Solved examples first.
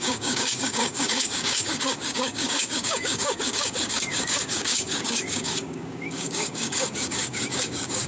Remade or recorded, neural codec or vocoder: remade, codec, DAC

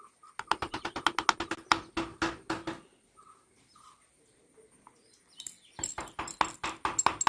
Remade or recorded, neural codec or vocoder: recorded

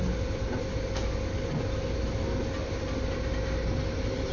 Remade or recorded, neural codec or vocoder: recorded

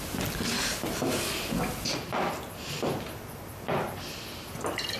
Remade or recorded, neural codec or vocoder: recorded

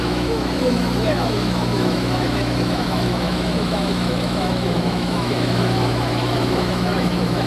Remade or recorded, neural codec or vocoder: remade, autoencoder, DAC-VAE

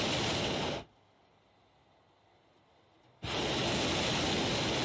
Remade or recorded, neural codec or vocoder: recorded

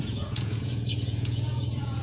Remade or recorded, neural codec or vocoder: remade, vocoder, Vocos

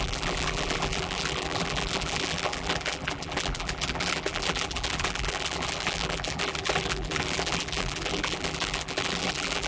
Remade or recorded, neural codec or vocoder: remade, vocoder, BigVGAN v2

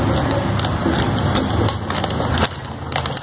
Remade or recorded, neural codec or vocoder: recorded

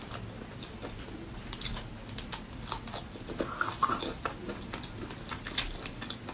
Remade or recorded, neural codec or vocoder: recorded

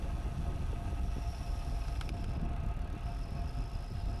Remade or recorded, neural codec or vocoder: recorded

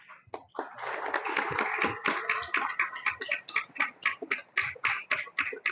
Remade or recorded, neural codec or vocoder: recorded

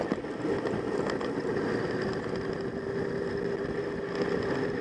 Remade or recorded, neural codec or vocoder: recorded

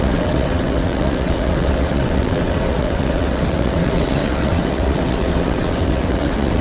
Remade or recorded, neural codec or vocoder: remade, vocoder, WaveNeXt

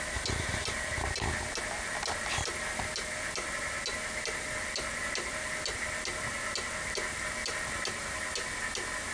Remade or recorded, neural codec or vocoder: recorded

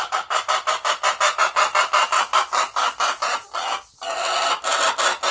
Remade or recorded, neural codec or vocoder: recorded